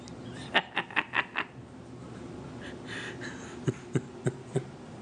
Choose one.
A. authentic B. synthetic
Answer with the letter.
A